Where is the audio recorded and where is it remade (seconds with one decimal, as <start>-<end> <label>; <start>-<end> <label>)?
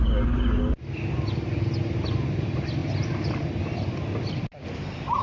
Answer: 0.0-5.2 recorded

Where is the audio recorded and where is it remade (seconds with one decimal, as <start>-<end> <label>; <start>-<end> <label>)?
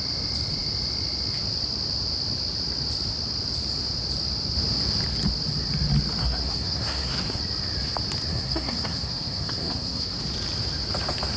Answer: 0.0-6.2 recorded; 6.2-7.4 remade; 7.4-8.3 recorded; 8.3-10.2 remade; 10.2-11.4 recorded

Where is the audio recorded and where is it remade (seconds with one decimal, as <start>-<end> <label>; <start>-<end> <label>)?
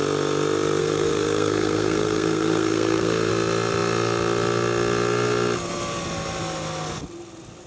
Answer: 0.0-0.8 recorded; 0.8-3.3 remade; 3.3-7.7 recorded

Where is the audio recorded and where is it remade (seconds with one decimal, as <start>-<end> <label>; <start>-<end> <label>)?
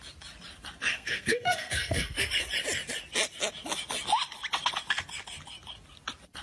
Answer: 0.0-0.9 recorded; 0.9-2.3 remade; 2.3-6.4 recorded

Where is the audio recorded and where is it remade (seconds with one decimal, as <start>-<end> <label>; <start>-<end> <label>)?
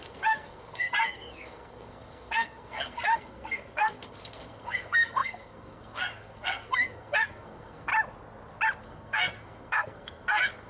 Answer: 0.0-7.9 remade; 7.9-8.8 recorded; 8.8-10.7 remade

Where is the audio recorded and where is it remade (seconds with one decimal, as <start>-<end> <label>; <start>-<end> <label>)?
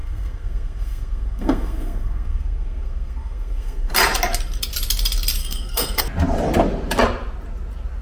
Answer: 0.0-3.9 remade; 3.9-5.4 recorded; 5.4-6.0 remade; 6.0-8.0 recorded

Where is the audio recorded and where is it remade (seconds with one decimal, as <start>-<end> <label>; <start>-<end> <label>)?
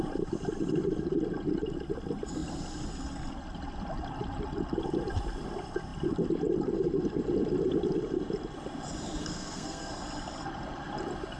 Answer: 0.0-9.2 recorded; 9.2-9.9 remade; 9.9-11.4 recorded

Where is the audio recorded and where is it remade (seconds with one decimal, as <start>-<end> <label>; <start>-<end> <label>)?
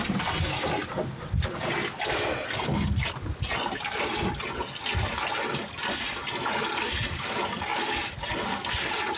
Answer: 0.0-9.2 recorded